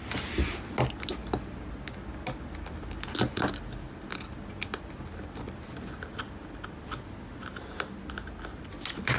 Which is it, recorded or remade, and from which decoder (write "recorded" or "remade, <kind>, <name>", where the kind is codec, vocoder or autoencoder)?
recorded